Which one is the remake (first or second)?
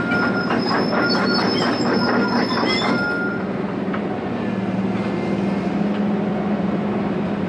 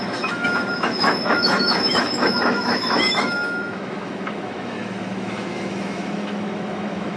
second